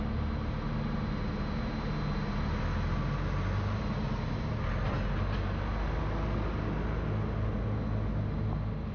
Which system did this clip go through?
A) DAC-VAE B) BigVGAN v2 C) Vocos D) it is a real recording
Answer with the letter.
D